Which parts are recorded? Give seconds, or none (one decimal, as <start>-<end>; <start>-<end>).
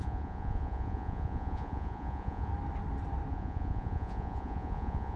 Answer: 2.5-3.3